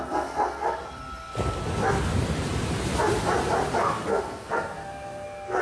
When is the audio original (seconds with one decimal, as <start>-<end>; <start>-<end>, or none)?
0.8-3.9